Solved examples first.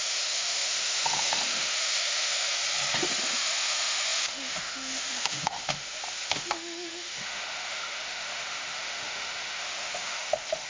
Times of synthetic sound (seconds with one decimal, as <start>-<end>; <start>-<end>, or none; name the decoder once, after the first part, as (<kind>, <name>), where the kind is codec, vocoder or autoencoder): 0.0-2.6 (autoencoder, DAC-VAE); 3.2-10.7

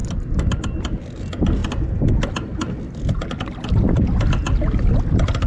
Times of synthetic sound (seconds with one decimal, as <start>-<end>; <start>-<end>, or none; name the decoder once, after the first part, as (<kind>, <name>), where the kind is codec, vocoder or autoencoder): none

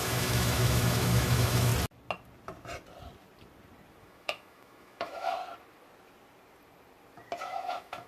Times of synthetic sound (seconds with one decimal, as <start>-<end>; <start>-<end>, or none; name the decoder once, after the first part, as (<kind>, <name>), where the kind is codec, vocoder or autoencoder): 0.0-1.7 (autoencoder, DAC-VAE); 4.0-5.4; 7.4-8.1